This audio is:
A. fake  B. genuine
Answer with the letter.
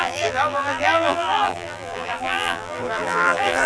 A